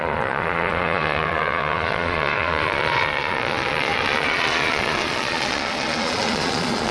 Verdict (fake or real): fake